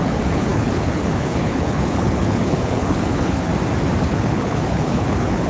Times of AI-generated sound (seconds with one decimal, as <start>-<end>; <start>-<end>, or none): 0.0-3.5; 4.0-5.5